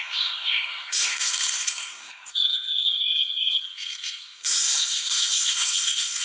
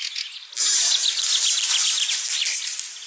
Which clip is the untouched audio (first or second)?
second